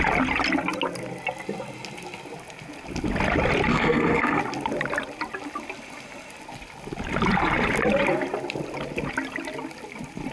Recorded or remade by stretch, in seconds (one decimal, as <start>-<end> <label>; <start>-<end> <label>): 0.0-3.7 recorded; 3.7-4.4 remade; 4.4-10.3 recorded